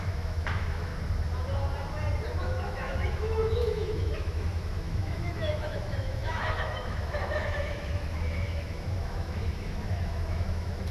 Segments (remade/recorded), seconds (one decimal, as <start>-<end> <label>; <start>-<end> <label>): 0.0-0.9 remade; 0.9-2.4 recorded; 2.4-10.9 remade